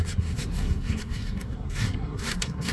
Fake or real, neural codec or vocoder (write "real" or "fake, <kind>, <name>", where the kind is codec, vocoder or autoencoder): fake, codec, SNAC